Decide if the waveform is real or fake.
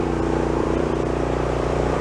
fake